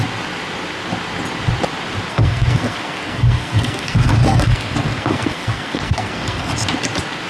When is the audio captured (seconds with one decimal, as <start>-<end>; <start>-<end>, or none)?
0.0-2.1; 6.5-7.3